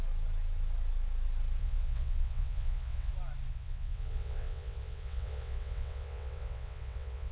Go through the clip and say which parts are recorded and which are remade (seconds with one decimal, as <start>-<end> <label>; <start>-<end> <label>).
0.0-1.6 recorded; 1.6-3.1 remade; 3.1-3.5 recorded; 3.5-7.3 remade